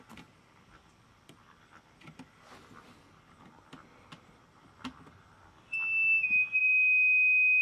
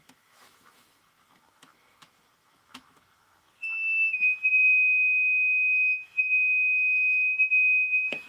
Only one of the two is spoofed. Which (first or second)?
second